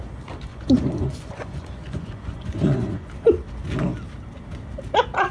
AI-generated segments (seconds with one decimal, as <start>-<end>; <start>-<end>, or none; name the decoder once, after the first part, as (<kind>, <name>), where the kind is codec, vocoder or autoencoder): 0.5-3.1 (vocoder, Vocos)